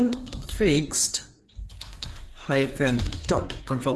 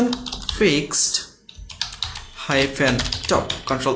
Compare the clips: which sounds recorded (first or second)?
second